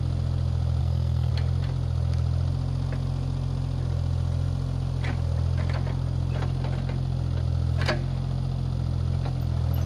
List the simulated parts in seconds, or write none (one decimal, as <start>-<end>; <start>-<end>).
0.8-1.3